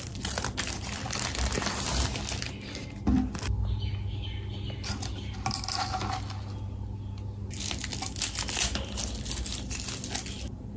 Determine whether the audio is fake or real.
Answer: real